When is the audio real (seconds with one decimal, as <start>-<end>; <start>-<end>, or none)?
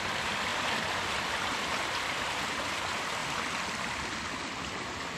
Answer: 3.2-5.2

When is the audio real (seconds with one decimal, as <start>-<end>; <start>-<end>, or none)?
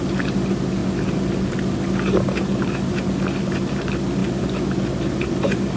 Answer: 0.8-3.4; 4.2-5.0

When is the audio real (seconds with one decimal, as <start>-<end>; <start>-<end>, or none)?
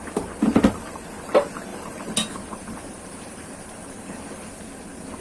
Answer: 0.0-1.7; 4.5-5.2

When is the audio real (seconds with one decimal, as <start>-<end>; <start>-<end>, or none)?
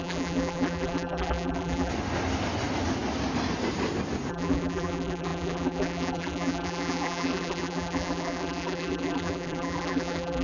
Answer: 1.9-4.3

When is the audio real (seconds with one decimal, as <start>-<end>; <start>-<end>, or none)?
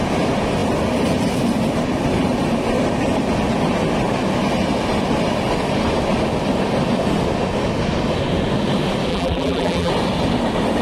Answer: 0.0-9.1; 9.9-10.8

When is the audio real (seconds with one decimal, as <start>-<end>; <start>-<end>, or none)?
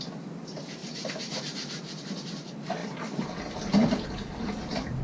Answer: 0.0-2.8; 3.4-5.0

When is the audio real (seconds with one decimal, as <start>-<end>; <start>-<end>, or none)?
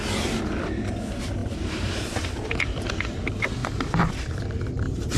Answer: 0.0-1.4; 2.9-3.6